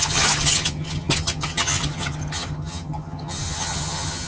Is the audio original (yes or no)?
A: no